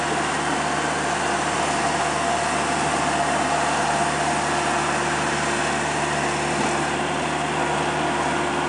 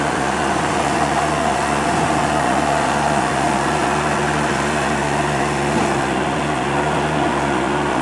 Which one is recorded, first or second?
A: first